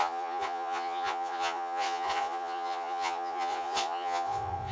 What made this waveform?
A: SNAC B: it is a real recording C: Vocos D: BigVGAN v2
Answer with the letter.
C